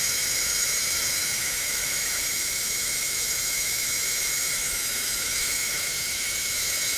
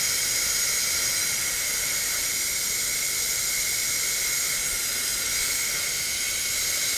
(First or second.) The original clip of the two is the second